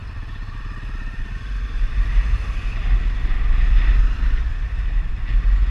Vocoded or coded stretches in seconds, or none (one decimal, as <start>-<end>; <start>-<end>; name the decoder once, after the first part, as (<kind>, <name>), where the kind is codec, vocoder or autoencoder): 1.0-3.0 (vocoder, BigVGAN v2); 4.5-5.1